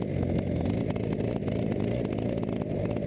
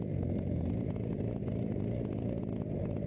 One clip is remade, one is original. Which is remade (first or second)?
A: second